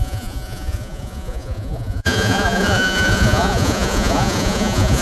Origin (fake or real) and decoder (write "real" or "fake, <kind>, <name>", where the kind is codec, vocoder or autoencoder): fake, vocoder, Vocos